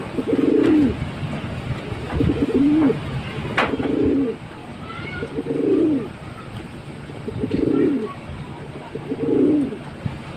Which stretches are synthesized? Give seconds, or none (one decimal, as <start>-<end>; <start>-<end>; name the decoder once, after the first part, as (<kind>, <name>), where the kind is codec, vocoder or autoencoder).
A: none